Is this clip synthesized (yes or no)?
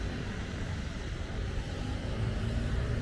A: yes